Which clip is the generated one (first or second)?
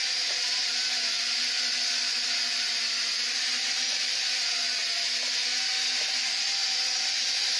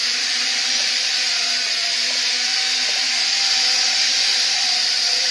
second